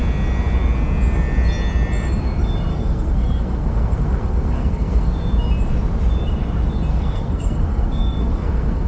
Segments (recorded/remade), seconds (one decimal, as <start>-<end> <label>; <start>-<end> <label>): 0.0-2.7 recorded; 2.7-5.1 remade; 5.1-6.9 recorded; 6.9-8.9 remade